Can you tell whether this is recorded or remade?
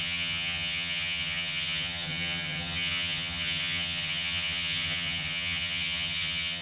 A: remade